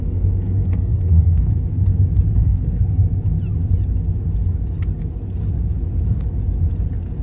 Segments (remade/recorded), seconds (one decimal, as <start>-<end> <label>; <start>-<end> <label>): 0.0-1.5 remade; 1.5-2.4 recorded; 2.4-3.1 remade; 3.1-7.2 recorded